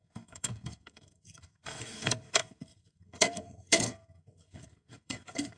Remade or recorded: remade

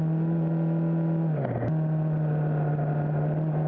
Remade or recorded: recorded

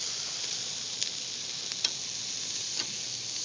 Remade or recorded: recorded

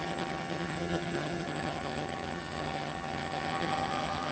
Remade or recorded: remade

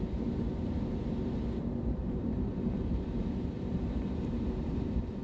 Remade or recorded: remade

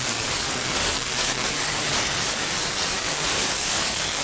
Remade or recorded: remade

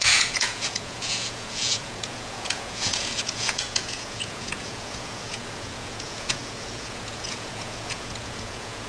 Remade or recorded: remade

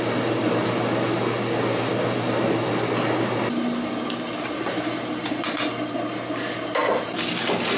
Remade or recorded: recorded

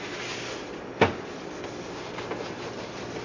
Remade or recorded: recorded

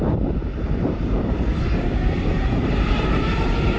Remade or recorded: remade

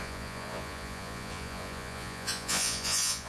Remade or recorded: remade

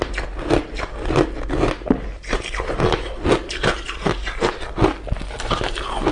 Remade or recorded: recorded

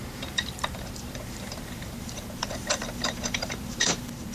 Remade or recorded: remade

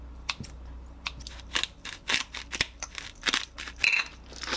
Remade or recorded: recorded